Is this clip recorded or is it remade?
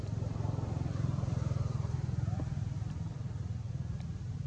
remade